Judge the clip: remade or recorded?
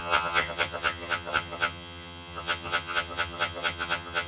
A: remade